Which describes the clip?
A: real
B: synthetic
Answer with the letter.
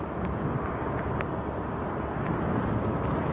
A